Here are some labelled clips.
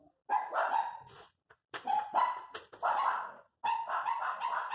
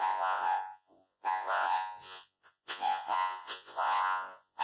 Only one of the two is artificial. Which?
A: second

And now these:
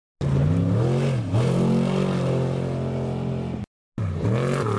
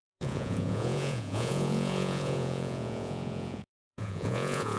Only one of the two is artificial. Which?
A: second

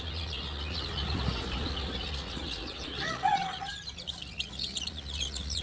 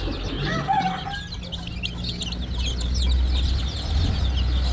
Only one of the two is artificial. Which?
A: first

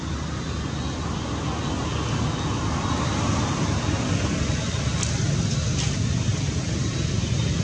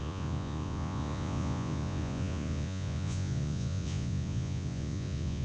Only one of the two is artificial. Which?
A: second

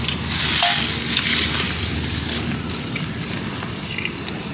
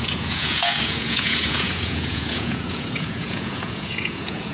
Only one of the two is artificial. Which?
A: second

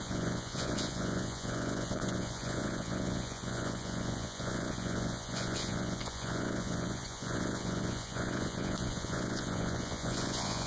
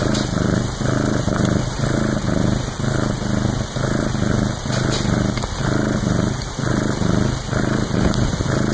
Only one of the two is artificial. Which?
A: first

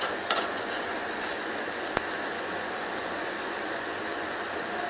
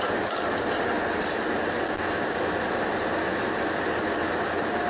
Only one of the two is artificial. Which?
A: first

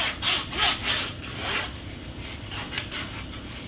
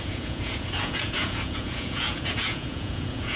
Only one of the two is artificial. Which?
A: second